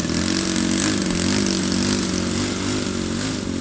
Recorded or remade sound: recorded